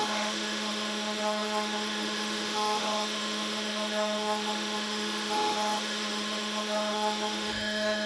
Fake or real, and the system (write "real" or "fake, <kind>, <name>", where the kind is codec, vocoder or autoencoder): fake, autoencoder, DAC-VAE